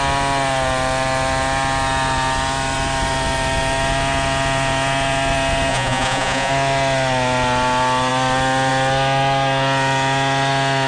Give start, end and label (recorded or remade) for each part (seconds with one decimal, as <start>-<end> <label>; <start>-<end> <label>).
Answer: 0.0-5.7 recorded; 5.7-6.5 remade; 6.5-10.9 recorded